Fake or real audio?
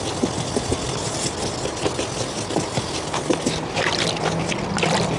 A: real